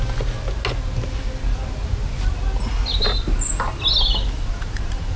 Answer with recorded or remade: recorded